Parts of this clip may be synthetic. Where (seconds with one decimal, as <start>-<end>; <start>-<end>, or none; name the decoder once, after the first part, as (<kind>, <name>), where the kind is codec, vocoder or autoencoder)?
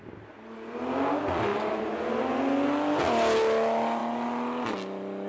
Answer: none